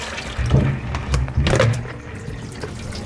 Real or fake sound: real